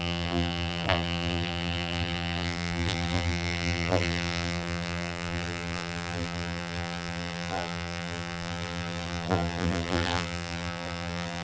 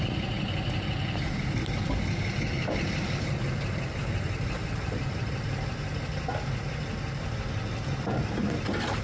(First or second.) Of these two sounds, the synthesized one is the first